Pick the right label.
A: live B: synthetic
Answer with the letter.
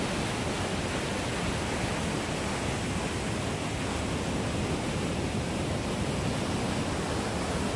A